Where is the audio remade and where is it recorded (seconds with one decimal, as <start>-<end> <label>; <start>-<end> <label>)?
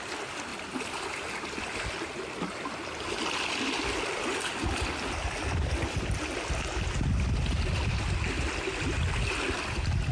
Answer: 0.0-10.1 recorded